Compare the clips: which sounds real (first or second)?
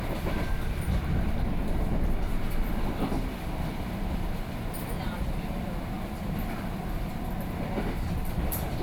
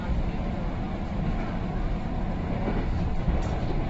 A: second